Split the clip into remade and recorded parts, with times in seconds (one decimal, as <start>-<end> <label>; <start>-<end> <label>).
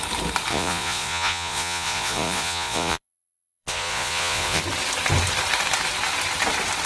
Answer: 0.0-0.5 recorded; 0.5-4.6 remade; 4.6-6.9 recorded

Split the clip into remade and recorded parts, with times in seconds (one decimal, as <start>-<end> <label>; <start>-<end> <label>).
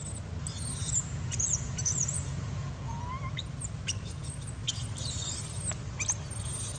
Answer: 0.0-0.8 recorded; 0.8-3.0 remade; 3.0-6.8 recorded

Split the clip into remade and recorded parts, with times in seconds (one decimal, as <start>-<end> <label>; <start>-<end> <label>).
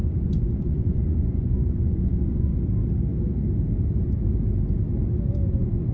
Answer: 0.0-2.5 remade; 2.5-5.5 recorded; 5.5-5.9 remade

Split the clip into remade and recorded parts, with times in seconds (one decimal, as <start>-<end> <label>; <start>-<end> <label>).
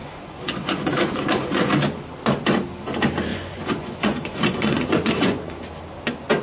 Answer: 0.0-1.7 remade; 1.7-3.3 recorded; 3.3-5.6 remade; 5.6-6.4 recorded